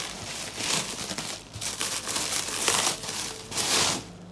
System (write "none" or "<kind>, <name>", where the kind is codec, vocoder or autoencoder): vocoder, BigVGAN v2